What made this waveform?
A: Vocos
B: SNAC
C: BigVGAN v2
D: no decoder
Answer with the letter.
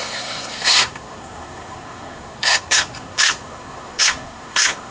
B